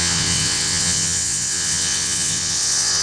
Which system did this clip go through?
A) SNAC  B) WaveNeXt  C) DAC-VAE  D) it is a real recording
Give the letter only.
B